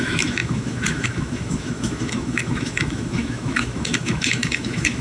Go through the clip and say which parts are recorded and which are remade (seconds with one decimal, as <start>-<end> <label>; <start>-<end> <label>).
0.0-5.0 remade